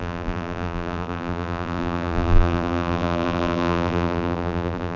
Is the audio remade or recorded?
remade